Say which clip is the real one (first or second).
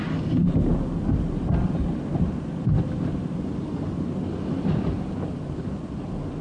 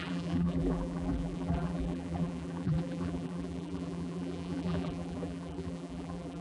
first